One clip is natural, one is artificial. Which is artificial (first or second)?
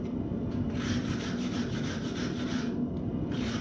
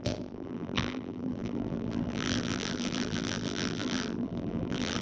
second